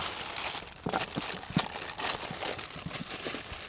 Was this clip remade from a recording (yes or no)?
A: no